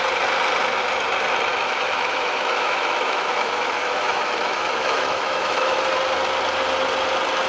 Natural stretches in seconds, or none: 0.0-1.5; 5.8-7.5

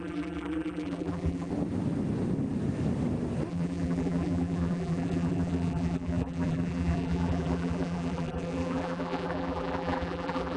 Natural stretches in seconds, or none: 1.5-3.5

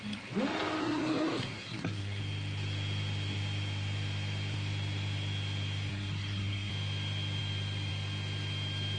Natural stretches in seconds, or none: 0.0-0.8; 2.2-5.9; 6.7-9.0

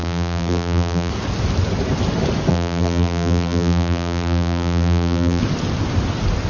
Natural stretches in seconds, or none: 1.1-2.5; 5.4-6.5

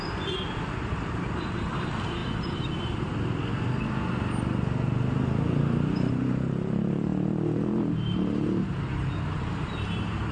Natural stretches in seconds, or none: 2.2-6.1

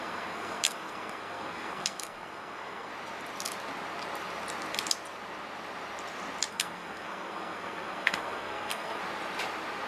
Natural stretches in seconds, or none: 2.9-6.5; 9.0-9.9